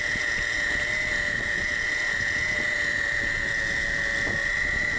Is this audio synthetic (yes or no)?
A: no